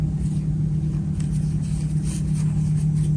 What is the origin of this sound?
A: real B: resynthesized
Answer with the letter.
A